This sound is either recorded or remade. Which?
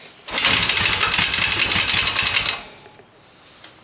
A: recorded